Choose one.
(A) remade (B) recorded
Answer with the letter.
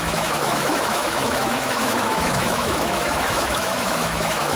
A